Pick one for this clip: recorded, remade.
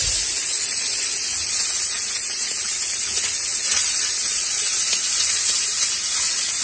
remade